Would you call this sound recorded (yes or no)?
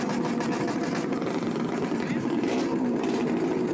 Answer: yes